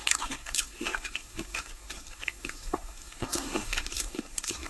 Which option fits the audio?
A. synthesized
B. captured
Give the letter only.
A